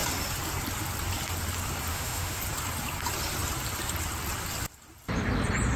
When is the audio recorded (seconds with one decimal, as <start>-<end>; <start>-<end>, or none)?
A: 0.0-1.9; 2.4-5.8